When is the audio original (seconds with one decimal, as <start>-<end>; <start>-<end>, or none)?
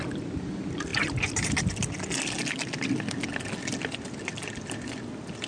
0.0-5.5